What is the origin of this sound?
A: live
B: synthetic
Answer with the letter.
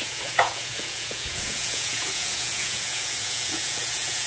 B